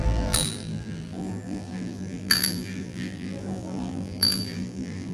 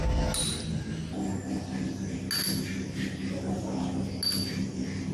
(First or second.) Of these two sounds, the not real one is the first